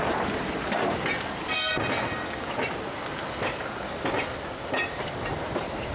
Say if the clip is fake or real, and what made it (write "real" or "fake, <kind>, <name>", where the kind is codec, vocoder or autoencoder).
real